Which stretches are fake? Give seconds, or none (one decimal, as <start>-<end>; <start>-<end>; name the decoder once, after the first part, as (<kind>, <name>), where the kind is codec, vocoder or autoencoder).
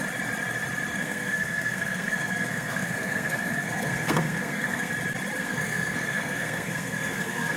0.9-4.9 (codec, SNAC); 5.4-7.6